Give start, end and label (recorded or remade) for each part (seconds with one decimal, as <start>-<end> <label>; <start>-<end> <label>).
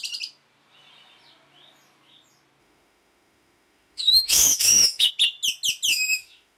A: 0.0-2.6 recorded; 2.6-5.1 remade; 5.1-5.9 recorded; 5.9-6.6 remade